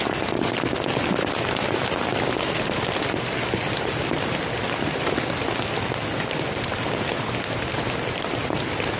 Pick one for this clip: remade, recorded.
recorded